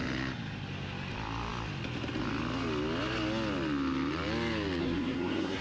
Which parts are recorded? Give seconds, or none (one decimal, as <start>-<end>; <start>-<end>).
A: 0.0-4.8